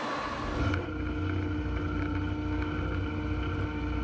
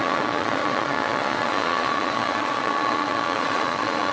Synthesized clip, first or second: second